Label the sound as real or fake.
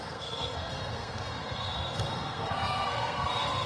fake